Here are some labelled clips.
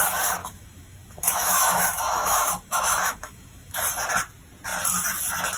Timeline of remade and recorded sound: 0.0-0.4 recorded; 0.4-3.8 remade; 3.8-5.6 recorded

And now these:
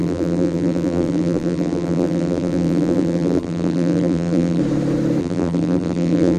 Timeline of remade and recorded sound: 0.0-4.6 remade; 4.6-5.2 recorded; 5.2-6.4 remade

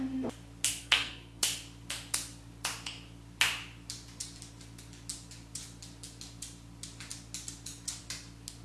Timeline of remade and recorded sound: 0.0-0.8 recorded; 0.8-1.4 remade; 1.4-8.6 recorded

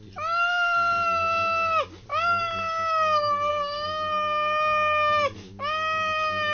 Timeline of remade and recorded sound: 0.0-6.5 recorded